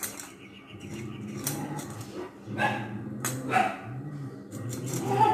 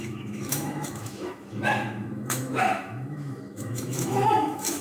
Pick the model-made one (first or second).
second